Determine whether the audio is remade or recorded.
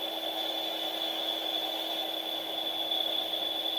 recorded